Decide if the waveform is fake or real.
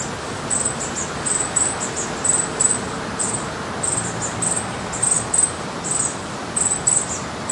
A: real